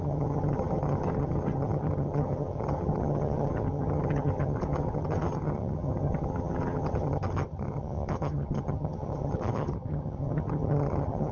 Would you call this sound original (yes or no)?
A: no